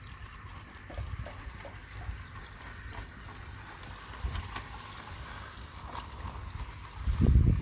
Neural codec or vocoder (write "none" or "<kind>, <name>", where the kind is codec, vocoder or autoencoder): none